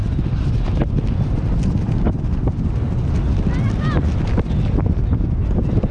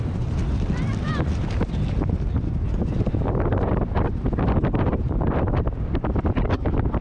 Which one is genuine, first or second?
first